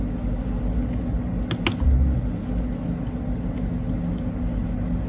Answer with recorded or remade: recorded